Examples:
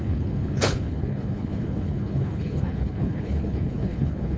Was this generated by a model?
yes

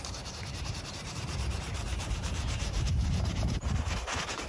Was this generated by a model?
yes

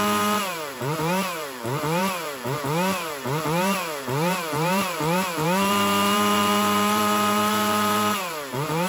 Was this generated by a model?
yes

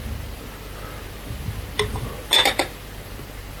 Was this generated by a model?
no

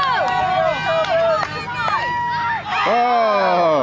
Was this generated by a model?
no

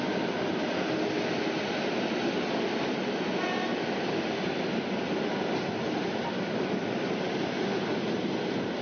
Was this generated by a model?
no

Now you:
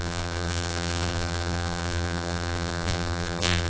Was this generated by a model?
yes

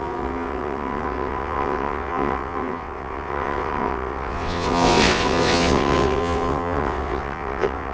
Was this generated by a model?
yes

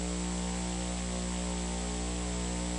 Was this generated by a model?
no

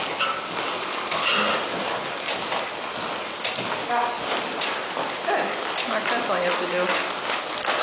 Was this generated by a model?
no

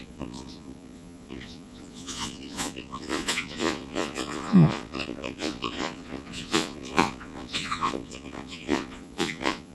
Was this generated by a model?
yes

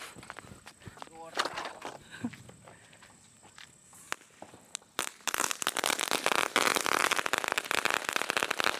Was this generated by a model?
no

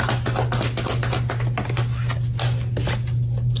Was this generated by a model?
no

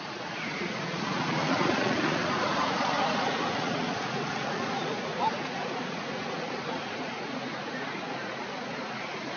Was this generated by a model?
yes